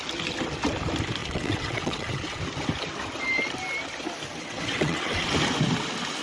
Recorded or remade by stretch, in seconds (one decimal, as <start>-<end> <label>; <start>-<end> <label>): 0.0-1.2 recorded; 1.2-2.4 remade; 2.4-4.4 recorded; 4.4-5.3 remade; 5.3-6.2 recorded

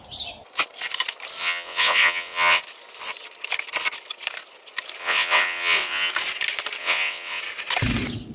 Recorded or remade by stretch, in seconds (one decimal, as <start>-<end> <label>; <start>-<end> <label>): 0.0-1.4 recorded; 1.4-2.6 remade; 2.6-5.0 recorded; 5.0-6.1 remade; 6.1-6.8 recorded; 6.8-7.4 remade; 7.4-8.3 recorded

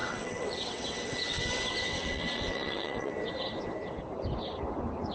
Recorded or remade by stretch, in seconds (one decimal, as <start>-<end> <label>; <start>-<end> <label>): 0.0-3.1 remade; 3.1-5.1 recorded